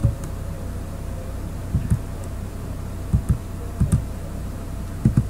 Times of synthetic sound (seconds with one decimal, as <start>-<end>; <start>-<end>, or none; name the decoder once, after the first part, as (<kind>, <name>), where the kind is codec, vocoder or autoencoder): none